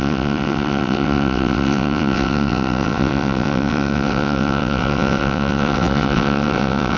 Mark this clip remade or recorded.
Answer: remade